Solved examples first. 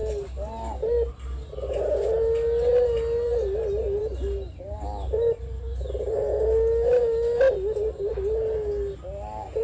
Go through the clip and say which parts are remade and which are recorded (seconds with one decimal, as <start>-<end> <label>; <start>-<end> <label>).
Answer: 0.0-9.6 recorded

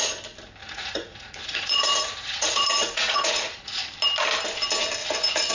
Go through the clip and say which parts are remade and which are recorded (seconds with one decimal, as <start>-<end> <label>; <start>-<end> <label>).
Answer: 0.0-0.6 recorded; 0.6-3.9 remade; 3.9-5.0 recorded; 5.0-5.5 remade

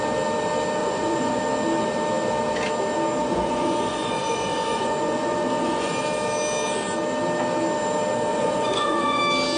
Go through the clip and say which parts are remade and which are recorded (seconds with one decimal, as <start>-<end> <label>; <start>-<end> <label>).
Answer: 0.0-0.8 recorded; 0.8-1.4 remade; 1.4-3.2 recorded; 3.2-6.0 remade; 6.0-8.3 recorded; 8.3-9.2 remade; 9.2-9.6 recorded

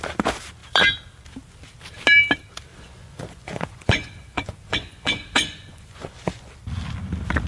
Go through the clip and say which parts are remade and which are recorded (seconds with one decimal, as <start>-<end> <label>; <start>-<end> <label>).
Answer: 0.0-2.7 recorded; 2.7-6.5 remade; 6.5-7.5 recorded